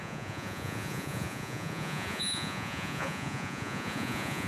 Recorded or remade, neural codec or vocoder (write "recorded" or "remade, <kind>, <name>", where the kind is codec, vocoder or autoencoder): remade, vocoder, Vocos